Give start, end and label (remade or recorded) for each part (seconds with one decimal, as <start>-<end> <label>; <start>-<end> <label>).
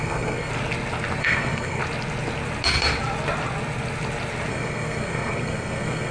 0.0-0.5 remade; 0.5-1.2 recorded; 1.2-1.8 remade; 1.8-4.5 recorded; 4.5-6.1 remade